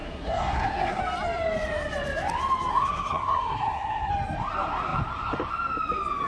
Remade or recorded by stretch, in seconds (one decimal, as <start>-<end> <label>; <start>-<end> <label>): 0.0-1.0 remade; 1.0-2.7 recorded; 2.7-4.1 remade; 4.1-6.3 recorded